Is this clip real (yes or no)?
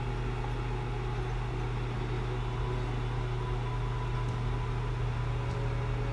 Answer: yes